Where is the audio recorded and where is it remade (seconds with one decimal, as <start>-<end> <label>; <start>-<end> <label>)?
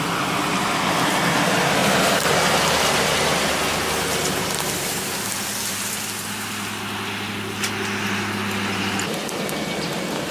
0.0-10.3 recorded